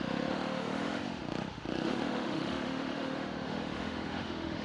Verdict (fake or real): fake